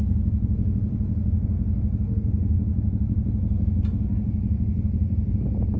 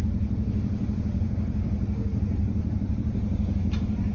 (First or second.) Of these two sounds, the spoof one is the second